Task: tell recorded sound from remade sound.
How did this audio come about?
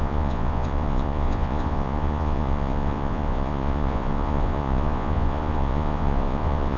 remade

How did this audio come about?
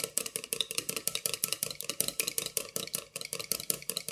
remade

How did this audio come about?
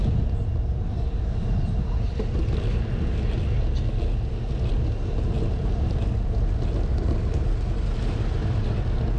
recorded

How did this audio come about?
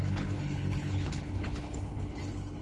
remade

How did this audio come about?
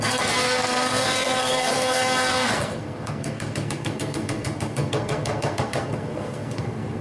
remade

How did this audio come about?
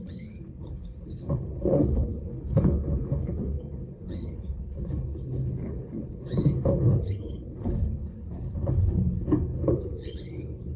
remade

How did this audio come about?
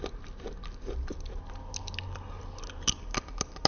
recorded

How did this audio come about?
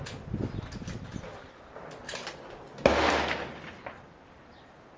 recorded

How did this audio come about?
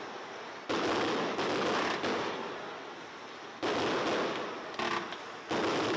recorded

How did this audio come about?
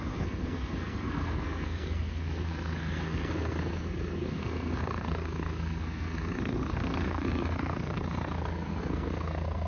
remade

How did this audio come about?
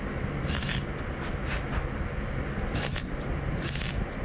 recorded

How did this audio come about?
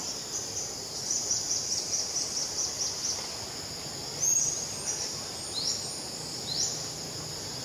recorded